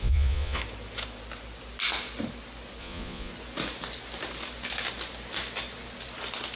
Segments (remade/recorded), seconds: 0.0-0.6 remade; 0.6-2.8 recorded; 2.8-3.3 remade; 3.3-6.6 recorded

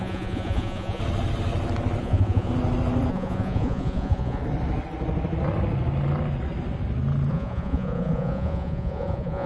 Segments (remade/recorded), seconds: 0.0-1.0 remade; 1.0-2.0 recorded; 2.0-2.5 remade; 2.5-3.1 recorded; 3.1-4.4 remade; 4.4-7.3 recorded; 7.3-9.5 remade

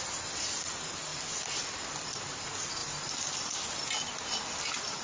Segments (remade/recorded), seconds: 0.0-5.0 recorded

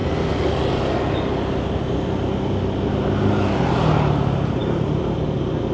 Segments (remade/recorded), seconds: 0.0-5.7 recorded

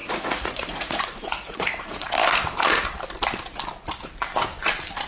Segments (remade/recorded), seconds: 0.0-2.1 remade; 2.1-5.1 recorded

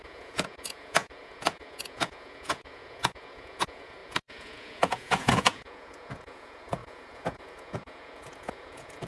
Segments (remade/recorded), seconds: 0.0-9.1 remade